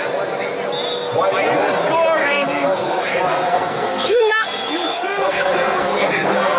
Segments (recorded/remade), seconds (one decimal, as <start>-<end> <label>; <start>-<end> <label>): 0.0-2.2 recorded; 2.2-6.6 remade